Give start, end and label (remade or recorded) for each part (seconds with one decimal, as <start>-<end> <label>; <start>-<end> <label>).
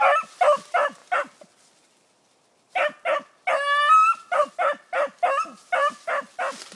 0.0-6.8 recorded